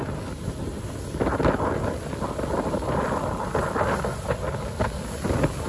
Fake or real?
real